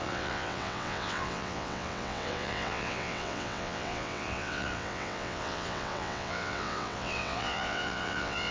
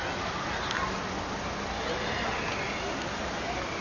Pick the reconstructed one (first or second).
first